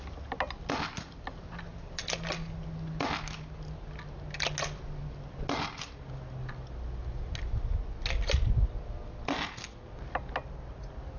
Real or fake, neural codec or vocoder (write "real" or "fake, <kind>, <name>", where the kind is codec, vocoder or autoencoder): real